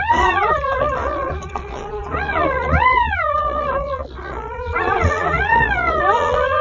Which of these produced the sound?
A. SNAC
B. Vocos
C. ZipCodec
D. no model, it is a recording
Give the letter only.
B